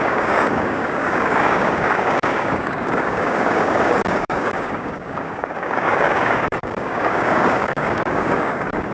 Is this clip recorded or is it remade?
remade